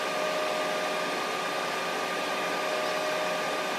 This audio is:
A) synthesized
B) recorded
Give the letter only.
B